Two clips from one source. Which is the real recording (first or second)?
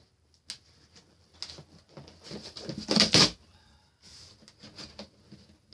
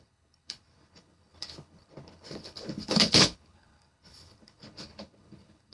first